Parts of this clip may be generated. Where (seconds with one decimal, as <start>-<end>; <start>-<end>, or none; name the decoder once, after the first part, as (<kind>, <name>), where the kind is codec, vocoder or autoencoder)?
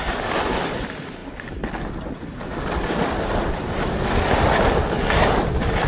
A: none